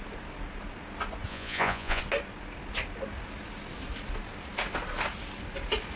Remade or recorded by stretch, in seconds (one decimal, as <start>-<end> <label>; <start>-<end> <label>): 0.0-1.3 recorded; 1.3-2.0 remade; 2.0-6.0 recorded